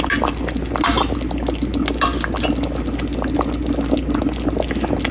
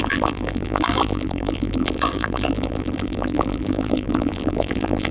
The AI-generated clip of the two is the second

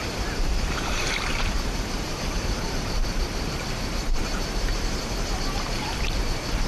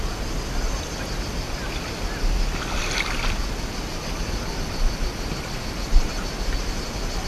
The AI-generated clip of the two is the first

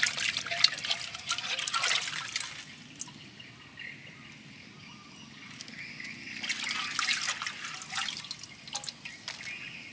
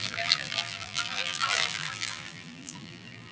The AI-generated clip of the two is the second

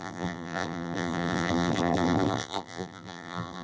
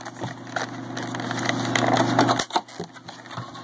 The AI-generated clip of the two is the first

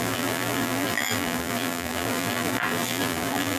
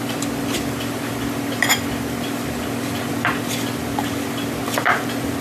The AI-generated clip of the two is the first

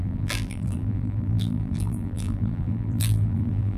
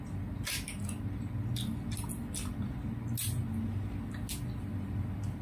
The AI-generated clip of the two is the first